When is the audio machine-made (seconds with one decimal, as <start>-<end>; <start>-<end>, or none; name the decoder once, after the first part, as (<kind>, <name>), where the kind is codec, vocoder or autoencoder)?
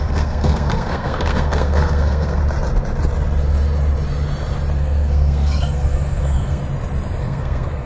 0.0-2.4 (codec, SNAC); 4.8-6.6; 7.2-7.9